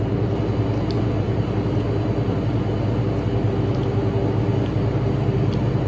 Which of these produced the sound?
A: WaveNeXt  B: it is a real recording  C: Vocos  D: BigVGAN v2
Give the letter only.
B